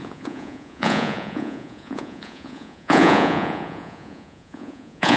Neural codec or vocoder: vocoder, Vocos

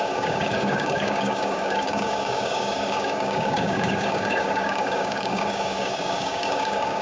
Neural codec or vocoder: codec, DAC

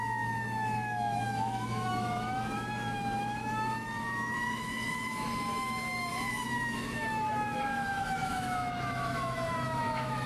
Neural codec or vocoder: autoencoder, DAC-VAE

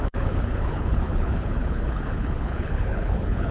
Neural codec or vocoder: codec, HILCodec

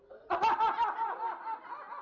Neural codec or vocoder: none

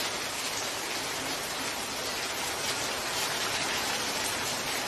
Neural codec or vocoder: none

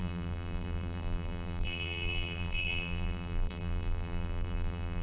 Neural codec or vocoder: vocoder, BigVGAN v2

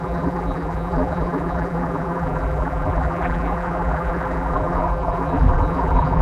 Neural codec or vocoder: vocoder, BigVGAN v2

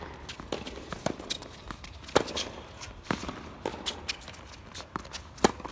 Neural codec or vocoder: none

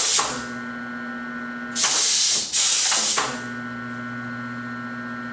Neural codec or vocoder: none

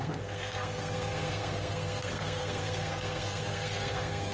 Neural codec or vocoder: codec, SNAC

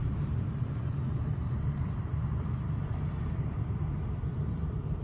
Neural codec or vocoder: vocoder, BigVGAN v2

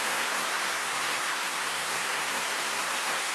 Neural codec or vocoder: codec, SNAC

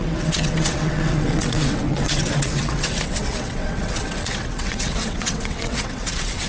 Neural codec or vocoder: vocoder, WaveNeXt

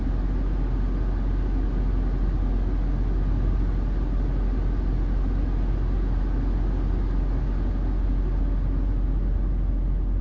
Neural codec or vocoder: none